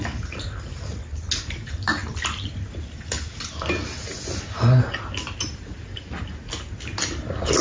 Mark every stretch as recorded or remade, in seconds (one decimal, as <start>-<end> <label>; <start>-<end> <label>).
0.0-7.6 recorded